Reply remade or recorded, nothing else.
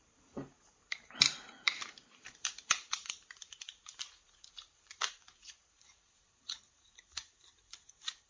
remade